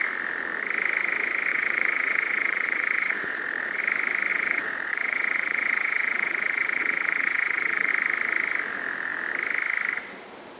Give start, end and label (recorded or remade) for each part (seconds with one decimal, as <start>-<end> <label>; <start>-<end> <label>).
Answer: 0.0-1.5 recorded; 1.5-3.8 remade; 3.8-4.3 recorded; 4.3-7.9 remade; 7.9-10.6 recorded